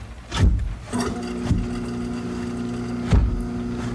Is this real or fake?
real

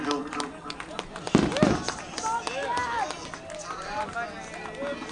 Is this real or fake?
real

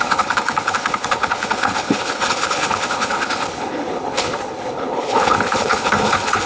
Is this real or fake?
fake